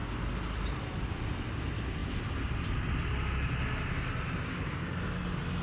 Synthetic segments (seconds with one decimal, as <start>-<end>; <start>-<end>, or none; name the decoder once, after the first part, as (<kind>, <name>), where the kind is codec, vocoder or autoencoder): none